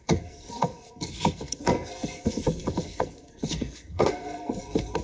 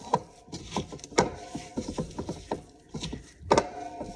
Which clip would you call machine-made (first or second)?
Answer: first